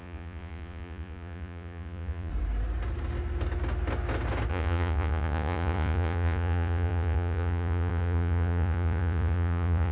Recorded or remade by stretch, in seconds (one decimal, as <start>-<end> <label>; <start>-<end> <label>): 0.0-2.3 remade; 2.3-4.5 recorded; 4.5-9.9 remade